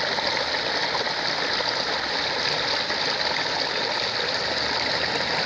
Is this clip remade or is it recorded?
recorded